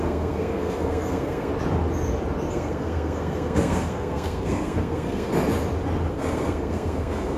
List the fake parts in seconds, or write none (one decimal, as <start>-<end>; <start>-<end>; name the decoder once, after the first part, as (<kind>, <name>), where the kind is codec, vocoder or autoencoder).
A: 0.0-1.5 (codec, SNAC); 2.5-5.3; 6.1-7.4